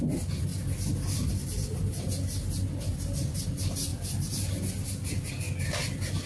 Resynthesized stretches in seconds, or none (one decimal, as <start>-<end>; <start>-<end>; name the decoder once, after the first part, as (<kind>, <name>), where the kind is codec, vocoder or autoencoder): none